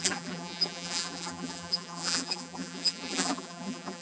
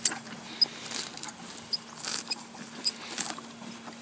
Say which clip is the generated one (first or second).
first